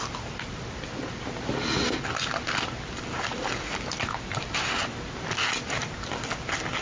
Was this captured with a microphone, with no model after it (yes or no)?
yes